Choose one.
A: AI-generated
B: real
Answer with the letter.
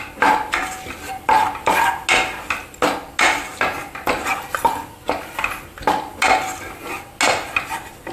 B